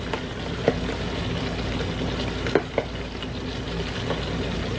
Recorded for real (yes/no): yes